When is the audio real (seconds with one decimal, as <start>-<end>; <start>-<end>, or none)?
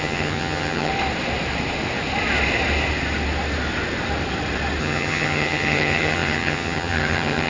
0.9-4.8